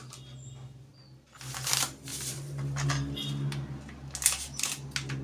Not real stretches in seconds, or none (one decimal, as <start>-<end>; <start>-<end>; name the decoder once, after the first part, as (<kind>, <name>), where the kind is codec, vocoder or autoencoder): 2.1-2.9 (vocoder, BigVGAN v2)